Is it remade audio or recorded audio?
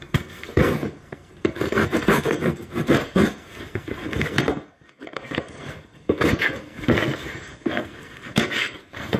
remade